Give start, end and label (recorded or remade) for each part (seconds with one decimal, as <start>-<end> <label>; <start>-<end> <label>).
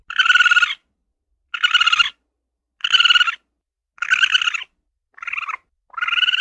0.0-6.4 recorded